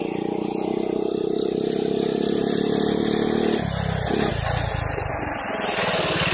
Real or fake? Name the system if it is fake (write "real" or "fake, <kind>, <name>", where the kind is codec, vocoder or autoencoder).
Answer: real